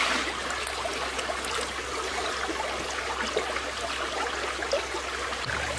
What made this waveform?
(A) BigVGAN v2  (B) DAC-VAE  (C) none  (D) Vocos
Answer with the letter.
C